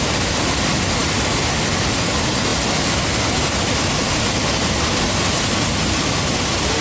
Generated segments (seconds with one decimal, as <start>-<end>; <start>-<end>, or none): none